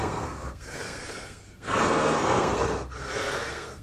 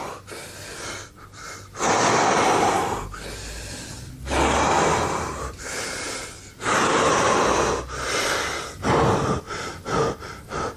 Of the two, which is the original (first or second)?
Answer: second